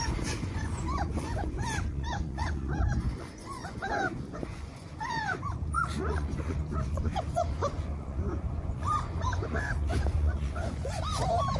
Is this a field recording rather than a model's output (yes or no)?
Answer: no